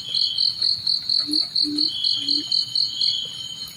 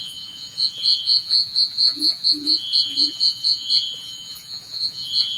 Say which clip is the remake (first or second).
second